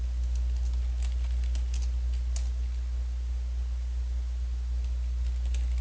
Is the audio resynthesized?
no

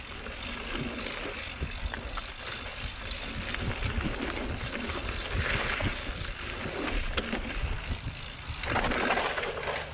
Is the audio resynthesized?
no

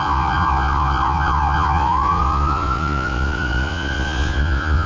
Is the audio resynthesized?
yes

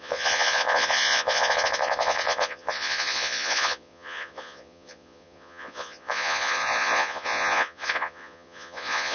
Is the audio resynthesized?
yes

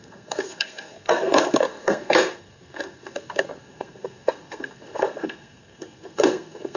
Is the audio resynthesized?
yes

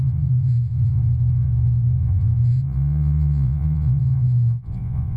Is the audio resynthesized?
yes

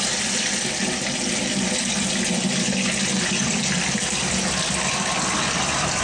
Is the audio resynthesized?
no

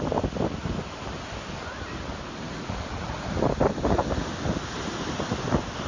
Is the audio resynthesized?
no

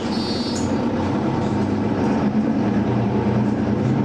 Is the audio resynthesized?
yes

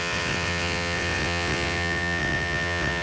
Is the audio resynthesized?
yes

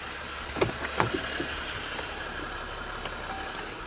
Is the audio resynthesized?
no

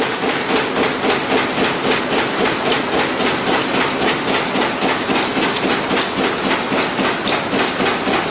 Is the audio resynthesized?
no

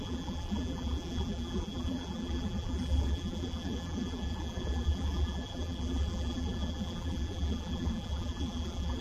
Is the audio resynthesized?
yes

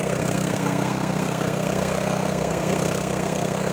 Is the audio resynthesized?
yes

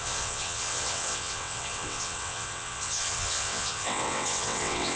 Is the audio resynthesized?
yes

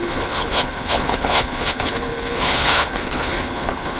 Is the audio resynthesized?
yes